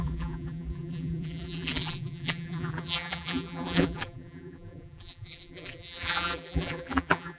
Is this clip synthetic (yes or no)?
yes